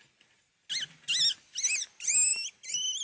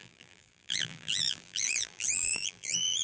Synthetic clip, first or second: second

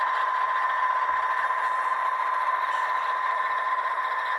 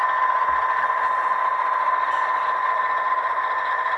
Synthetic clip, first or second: first